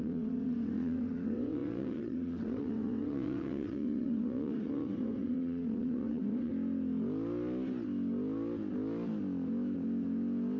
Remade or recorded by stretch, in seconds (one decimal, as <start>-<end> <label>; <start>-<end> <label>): 0.0-6.5 remade; 6.5-10.6 recorded